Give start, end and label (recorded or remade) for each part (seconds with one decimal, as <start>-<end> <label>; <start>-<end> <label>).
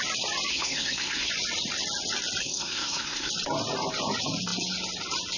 0.0-0.5 recorded; 0.5-1.3 remade; 1.3-2.4 recorded; 2.4-3.3 remade; 3.3-5.4 recorded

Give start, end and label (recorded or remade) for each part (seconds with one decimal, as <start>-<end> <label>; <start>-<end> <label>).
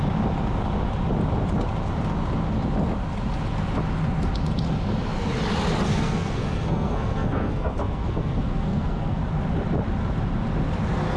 0.0-5.9 recorded; 5.9-9.2 remade; 9.2-11.2 recorded